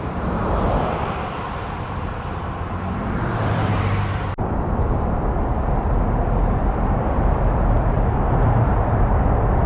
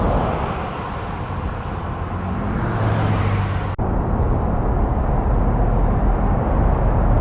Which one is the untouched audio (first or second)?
second